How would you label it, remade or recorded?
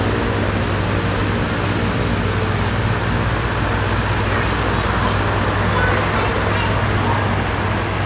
recorded